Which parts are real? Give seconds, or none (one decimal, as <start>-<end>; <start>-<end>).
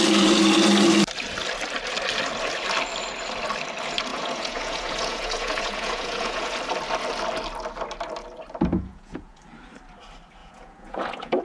0.0-4.1; 6.6-8.7; 9.4-10.4